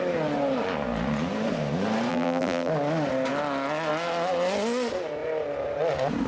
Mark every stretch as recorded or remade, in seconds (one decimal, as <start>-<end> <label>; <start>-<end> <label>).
0.0-2.1 recorded; 2.1-2.7 remade; 2.7-6.3 recorded